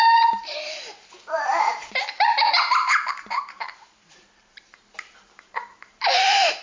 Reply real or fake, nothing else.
fake